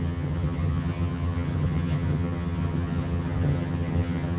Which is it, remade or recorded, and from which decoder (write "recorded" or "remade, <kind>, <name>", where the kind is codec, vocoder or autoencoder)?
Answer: remade, vocoder, HiFi-GAN